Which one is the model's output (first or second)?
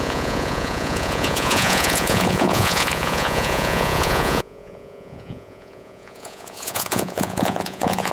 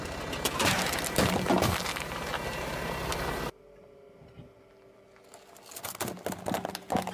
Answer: first